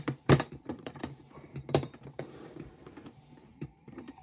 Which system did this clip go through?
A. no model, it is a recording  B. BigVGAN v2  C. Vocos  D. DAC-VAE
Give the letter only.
B